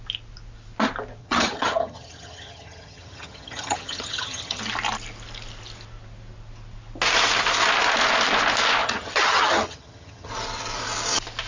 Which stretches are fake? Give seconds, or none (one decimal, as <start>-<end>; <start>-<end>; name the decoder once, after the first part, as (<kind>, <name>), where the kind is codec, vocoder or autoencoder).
1.2-4.6 (vocoder, HiFi-GAN); 8.8-10.3